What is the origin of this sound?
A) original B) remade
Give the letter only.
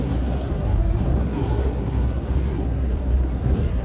B